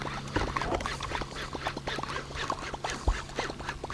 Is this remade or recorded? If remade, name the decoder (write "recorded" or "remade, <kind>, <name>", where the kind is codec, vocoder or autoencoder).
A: recorded